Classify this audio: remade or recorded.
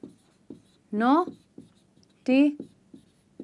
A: recorded